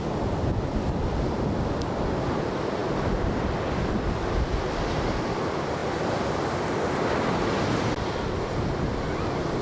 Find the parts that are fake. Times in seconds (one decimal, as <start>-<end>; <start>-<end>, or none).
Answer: none